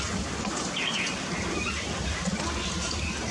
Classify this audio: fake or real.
real